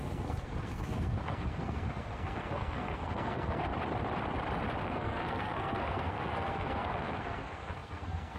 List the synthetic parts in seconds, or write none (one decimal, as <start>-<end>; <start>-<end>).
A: 0.0-3.7; 4.8-8.4